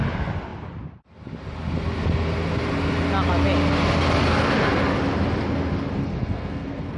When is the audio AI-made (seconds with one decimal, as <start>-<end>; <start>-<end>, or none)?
6.0-7.0